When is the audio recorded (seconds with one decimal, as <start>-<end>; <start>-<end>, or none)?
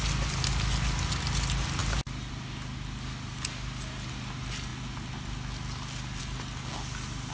0.0-7.3